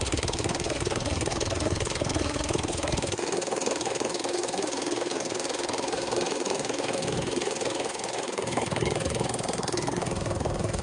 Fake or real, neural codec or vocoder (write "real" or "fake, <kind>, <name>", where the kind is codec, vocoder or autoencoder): fake, codec, SNAC